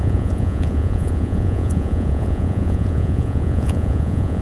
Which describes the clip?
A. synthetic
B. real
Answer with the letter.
A